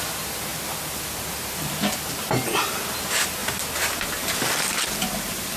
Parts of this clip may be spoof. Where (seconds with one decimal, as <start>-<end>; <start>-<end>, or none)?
0.0-0.5; 3.0-3.4